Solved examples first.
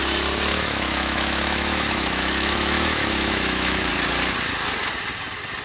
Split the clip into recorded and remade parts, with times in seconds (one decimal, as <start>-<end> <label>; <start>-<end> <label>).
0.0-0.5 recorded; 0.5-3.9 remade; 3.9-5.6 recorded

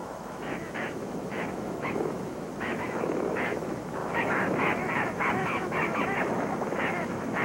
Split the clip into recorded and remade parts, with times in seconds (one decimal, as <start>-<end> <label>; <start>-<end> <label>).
0.0-7.4 remade

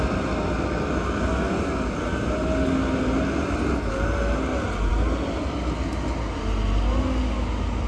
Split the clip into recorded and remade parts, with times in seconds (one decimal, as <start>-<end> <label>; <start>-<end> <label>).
0.0-7.9 recorded

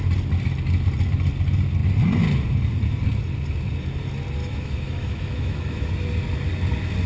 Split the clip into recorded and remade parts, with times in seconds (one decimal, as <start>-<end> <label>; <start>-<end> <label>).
0.0-4.4 recorded; 4.4-5.9 remade; 5.9-7.1 recorded